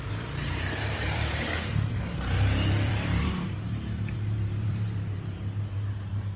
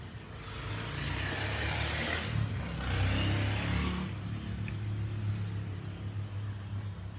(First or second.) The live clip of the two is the second